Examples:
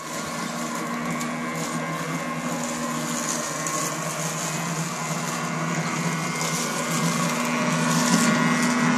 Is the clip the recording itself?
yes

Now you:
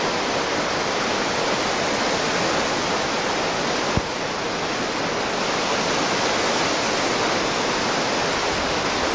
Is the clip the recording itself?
yes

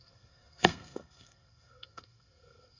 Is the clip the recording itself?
no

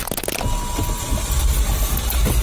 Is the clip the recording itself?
yes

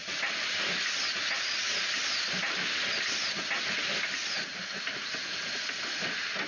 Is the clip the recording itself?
yes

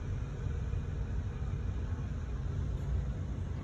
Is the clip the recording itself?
yes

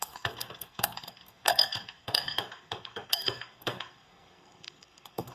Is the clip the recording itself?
no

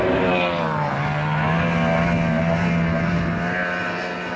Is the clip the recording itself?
yes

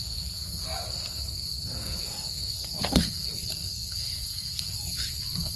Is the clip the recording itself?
no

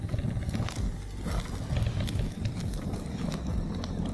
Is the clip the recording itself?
yes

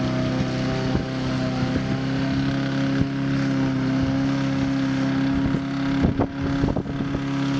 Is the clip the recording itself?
yes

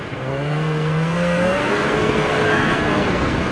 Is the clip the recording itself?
no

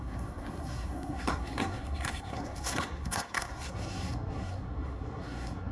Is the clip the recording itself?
no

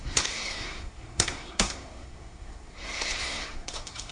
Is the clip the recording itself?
no